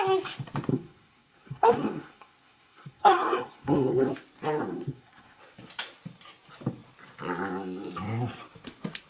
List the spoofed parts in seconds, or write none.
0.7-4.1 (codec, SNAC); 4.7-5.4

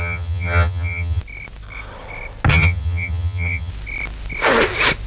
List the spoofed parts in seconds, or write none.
0.0-1.2 (vocoder, HiFi-GAN); 2.5-3.7

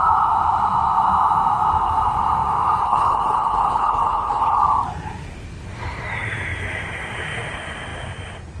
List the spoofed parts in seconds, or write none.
2.8-4.6 (codec, HILCodec)

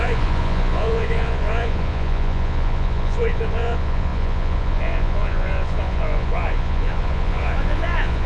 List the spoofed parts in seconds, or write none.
0.0-8.3 (vocoder, Vocos)